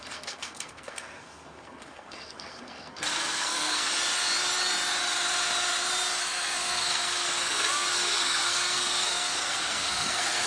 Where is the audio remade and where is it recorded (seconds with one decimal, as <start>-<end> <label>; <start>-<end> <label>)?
0.0-3.9 remade; 3.9-6.2 recorded; 6.2-10.5 remade